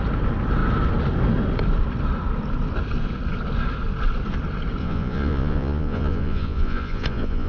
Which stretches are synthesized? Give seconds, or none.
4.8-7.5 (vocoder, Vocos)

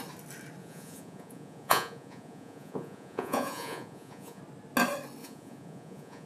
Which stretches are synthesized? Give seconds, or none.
0.6-4.4 (vocoder, Vocos); 5.2-6.3

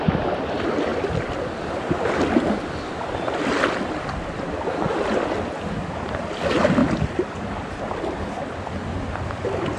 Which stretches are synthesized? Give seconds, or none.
none

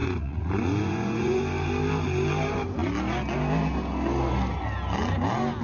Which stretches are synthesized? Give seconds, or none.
0.0-1.4 (vocoder, Vocos)

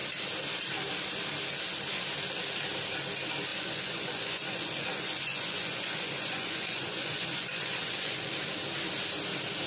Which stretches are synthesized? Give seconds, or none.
3.5-8.3 (vocoder, Vocos)

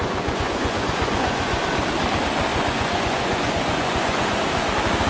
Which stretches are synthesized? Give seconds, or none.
0.0-1.6 (vocoder, Vocos); 2.5-4.4

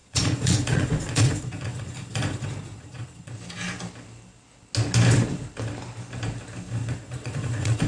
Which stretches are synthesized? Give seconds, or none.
0.0-3.3 (vocoder, Vocos); 6.8-7.9